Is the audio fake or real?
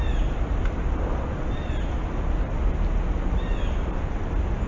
real